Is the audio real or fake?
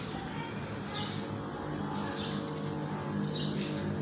real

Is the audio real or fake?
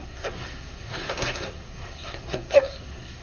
fake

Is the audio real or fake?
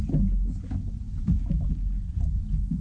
real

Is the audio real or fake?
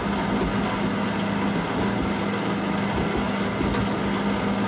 real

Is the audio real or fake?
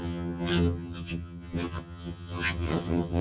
fake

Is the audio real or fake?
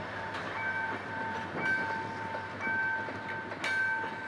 real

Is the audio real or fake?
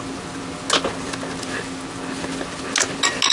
real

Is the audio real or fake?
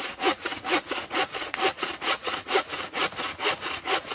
fake